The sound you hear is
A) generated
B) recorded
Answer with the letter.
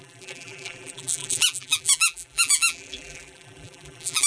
A